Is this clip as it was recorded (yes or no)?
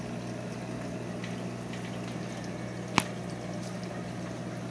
yes